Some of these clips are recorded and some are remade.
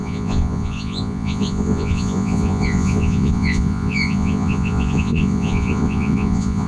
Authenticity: remade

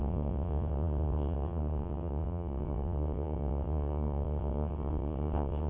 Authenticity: remade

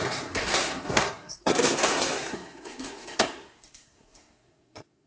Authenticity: remade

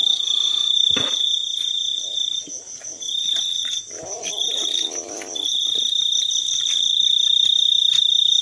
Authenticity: recorded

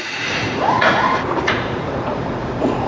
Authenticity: remade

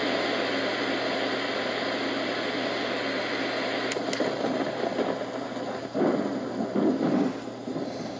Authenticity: recorded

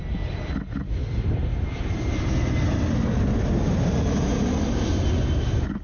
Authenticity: recorded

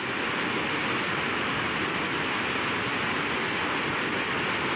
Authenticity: recorded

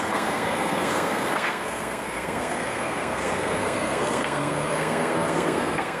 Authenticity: remade